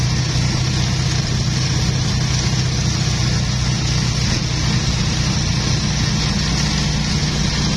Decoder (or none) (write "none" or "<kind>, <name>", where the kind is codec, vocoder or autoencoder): none